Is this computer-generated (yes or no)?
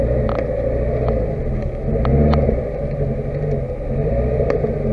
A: no